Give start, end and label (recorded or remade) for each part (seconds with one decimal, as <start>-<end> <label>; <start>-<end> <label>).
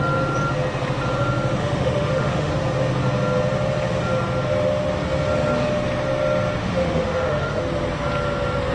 0.0-1.6 recorded; 1.6-2.5 remade; 2.5-6.6 recorded; 6.6-7.6 remade; 7.6-8.7 recorded